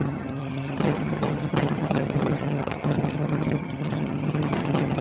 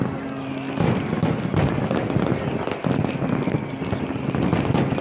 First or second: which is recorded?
second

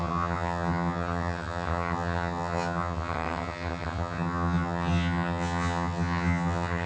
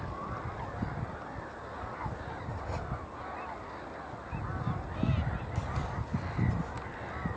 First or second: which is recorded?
second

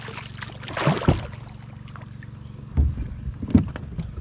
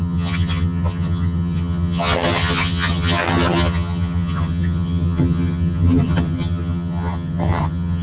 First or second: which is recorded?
first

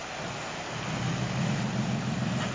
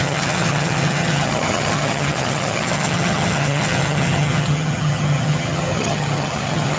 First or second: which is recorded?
first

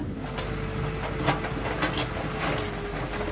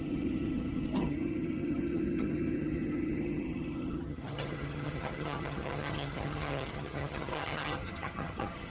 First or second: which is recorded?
first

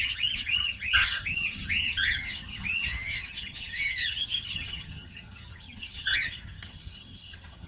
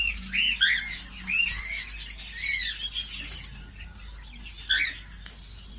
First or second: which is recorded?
second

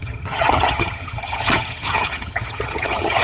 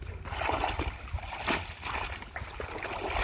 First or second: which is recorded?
second